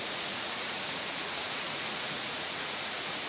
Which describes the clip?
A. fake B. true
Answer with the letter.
A